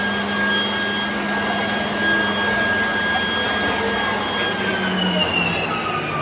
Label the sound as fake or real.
real